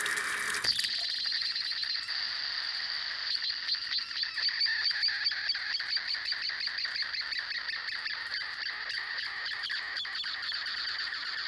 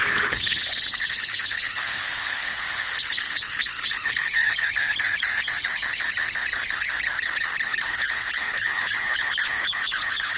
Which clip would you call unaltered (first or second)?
first